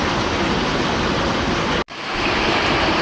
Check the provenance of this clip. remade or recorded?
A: recorded